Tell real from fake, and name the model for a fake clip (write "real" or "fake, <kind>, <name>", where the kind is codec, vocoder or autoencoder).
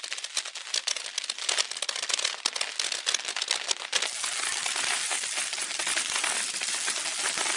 real